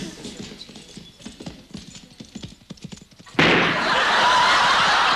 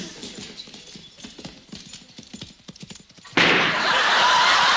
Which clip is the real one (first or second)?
first